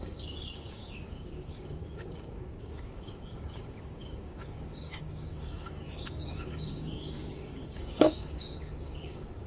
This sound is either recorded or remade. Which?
remade